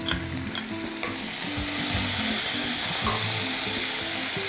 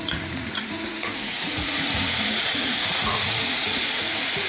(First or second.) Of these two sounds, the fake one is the second